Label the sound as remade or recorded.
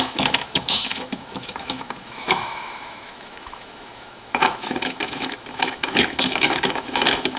remade